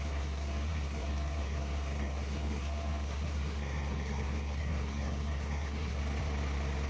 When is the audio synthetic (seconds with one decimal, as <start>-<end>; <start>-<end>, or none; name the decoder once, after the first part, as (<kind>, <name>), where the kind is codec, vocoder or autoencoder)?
0.0-6.0 (codec, SNAC)